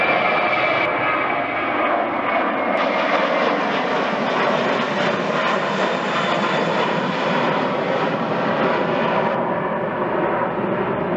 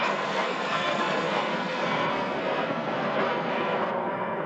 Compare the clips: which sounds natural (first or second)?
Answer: first